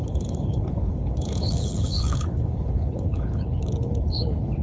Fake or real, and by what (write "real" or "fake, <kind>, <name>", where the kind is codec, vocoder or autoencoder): fake, codec, HILCodec